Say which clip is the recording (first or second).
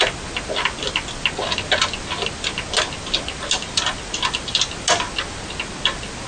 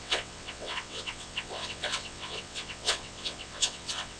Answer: first